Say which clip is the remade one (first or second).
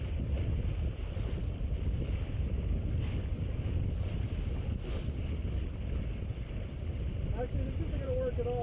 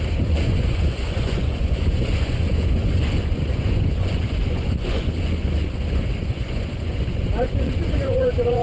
second